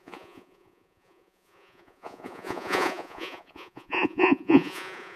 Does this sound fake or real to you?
fake